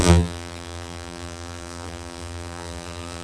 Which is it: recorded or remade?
remade